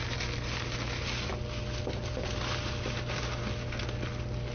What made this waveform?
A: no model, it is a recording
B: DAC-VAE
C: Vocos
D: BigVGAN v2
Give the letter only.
A